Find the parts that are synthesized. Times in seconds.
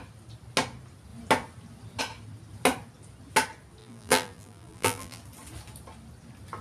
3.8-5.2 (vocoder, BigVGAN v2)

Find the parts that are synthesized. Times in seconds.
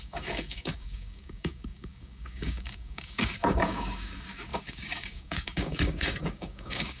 0.0-7.0 (codec, DAC)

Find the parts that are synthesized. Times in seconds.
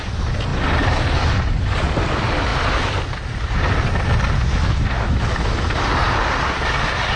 none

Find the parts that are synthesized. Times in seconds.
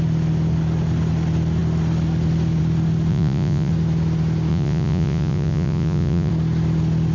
3.1-3.7 (vocoder, Vocos); 4.5-6.3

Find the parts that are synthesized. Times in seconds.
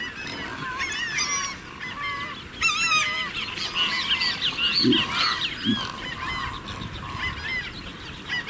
none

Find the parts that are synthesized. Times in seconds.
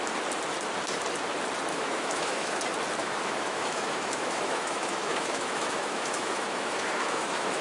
1.7-2.6 (autoencoder, DAC-VAE); 3.0-7.6